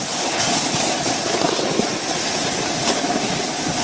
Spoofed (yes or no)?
no